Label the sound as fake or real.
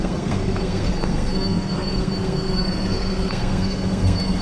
fake